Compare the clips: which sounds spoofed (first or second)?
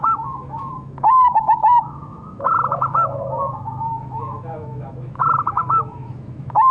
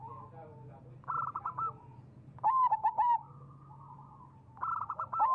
first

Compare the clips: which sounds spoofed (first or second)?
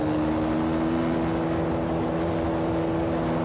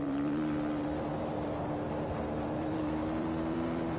second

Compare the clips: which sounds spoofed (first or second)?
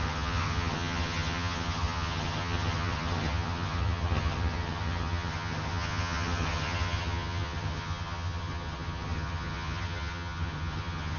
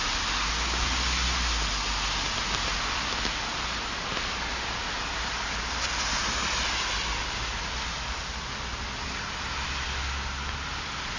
first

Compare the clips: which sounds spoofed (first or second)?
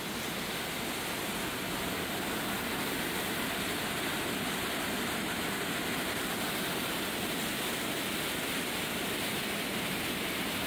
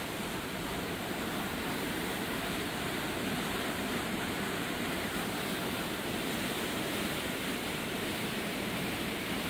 second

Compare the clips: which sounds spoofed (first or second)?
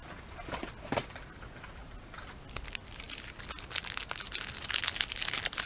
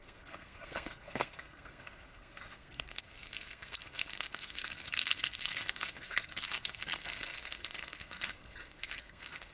second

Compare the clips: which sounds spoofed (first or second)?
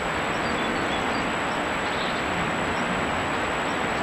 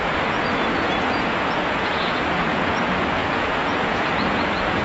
second